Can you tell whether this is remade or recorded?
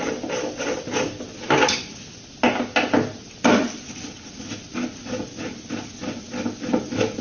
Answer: recorded